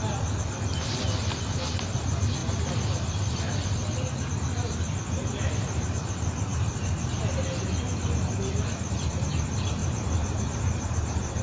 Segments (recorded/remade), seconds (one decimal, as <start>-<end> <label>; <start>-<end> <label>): 0.0-9.8 recorded; 9.8-11.4 remade